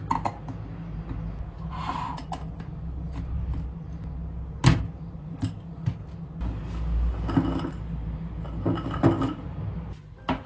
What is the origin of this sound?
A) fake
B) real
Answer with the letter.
B